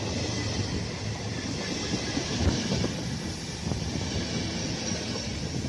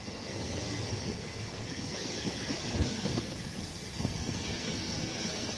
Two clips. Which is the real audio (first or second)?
first